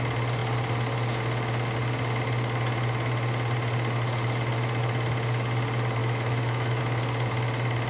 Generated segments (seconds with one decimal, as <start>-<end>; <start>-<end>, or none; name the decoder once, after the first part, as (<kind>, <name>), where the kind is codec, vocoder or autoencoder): 6.0-6.8 (autoencoder, DAC-VAE)